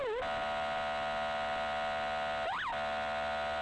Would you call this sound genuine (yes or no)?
yes